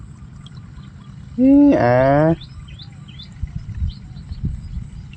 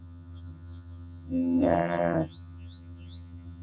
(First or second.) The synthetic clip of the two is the second